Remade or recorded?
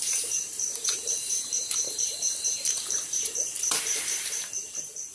remade